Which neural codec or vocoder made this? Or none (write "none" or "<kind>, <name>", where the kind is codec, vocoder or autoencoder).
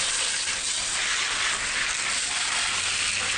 none